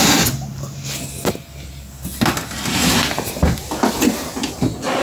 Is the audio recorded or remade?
recorded